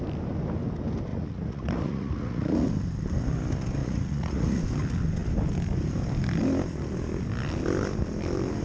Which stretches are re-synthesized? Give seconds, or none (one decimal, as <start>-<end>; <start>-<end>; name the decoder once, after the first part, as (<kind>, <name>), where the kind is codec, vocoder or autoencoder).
1.1-2.7 (vocoder, Vocos); 3.8-4.6